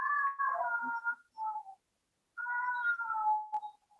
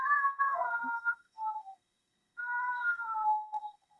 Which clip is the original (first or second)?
first